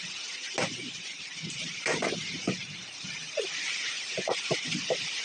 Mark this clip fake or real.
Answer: fake